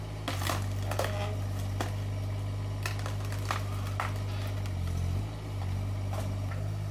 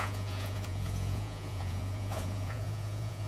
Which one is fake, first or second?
second